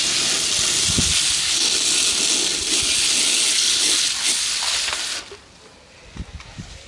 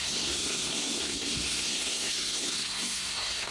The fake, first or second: second